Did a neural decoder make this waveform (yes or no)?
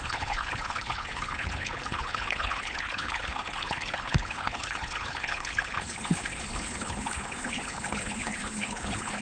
yes